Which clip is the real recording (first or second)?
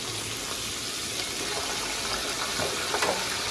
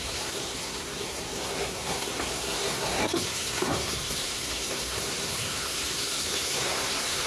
first